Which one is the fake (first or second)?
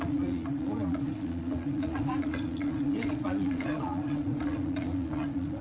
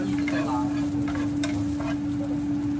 first